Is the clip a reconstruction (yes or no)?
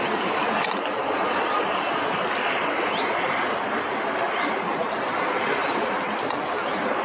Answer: no